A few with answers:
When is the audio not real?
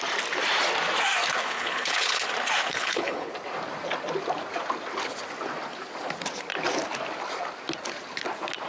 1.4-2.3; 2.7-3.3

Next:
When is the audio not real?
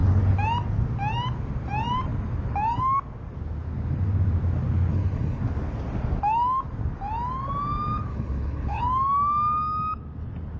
4.9-5.4; 8.1-8.8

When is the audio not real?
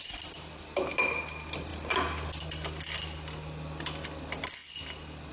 none